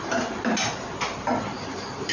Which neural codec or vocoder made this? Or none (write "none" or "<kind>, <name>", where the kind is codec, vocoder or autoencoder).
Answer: none